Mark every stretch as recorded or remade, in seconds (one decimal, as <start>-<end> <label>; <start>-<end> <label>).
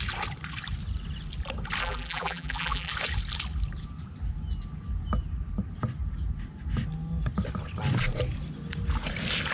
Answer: 0.0-1.8 recorded; 1.8-2.9 remade; 2.9-9.5 recorded